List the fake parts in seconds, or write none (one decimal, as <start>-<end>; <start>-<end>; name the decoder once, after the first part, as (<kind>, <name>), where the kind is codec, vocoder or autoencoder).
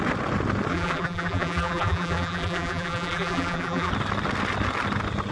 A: 0.7-3.9 (vocoder, BigVGAN v2)